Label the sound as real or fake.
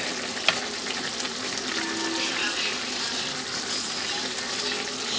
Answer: real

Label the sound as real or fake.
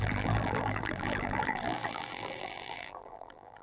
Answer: fake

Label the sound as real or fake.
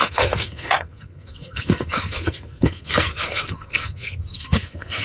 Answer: fake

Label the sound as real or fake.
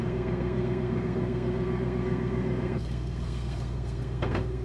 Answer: fake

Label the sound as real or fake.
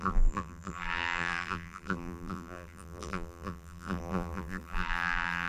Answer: fake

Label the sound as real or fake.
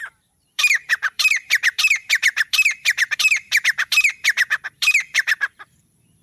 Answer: fake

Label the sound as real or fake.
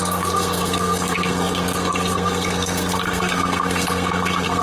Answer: fake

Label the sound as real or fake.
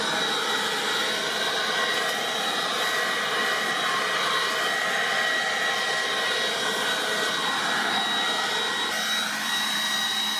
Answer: real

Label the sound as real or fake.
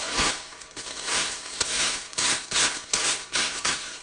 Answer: fake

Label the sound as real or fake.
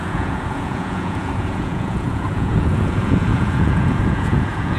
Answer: fake